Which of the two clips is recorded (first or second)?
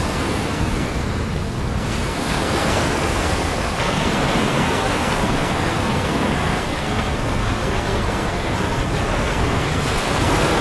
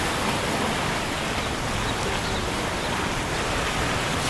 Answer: second